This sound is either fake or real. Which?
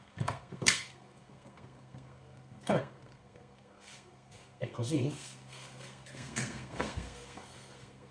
fake